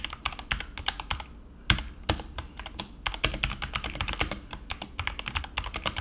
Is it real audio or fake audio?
real